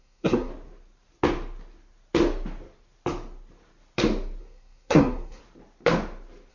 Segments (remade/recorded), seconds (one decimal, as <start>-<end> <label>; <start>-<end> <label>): 0.0-0.5 remade; 0.5-4.4 recorded; 4.4-5.4 remade; 5.4-6.5 recorded